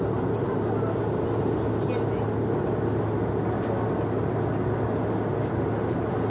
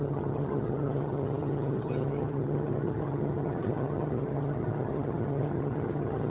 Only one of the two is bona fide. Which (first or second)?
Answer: first